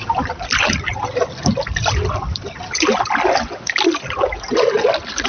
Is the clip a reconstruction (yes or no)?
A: no